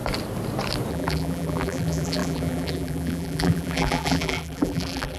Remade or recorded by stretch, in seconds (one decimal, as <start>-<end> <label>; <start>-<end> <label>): 0.0-0.9 recorded; 0.9-5.2 remade